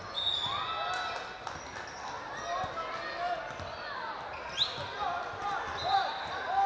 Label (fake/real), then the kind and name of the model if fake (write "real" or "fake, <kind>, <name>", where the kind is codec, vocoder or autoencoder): real